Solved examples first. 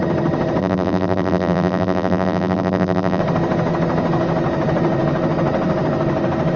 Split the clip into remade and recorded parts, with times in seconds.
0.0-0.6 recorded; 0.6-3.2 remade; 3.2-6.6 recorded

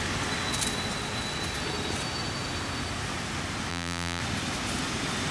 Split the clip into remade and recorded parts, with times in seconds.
0.0-3.7 recorded; 3.7-4.2 remade; 4.2-5.3 recorded

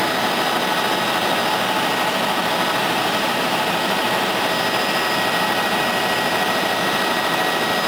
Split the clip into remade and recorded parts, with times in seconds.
0.0-2.8 recorded; 2.8-4.4 remade; 4.4-7.9 recorded

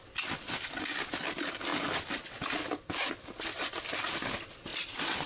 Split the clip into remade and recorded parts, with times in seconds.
0.0-5.3 recorded

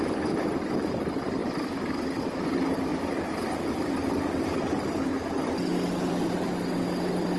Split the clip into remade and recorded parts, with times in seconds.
0.0-1.4 recorded; 1.4-2.2 remade; 2.2-2.9 recorded; 2.9-3.9 remade; 3.9-7.4 recorded

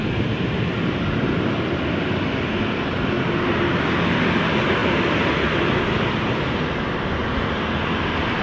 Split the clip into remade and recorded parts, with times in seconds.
0.0-8.4 recorded